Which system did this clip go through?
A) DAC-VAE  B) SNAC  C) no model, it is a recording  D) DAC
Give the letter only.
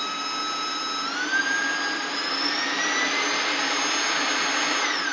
C